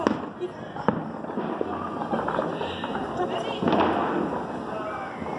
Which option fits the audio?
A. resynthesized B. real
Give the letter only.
B